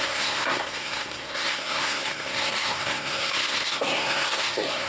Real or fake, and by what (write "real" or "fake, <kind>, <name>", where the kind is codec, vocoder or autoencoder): fake, codec, SNAC